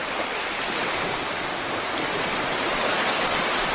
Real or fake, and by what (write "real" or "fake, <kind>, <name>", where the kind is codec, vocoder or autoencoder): real